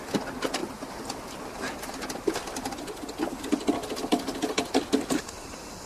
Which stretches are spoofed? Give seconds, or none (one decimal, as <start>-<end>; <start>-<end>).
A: 0.6-1.5; 4.1-4.7